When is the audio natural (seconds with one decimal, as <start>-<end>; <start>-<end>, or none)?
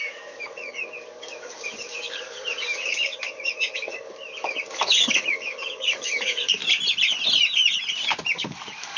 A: 6.6-8.3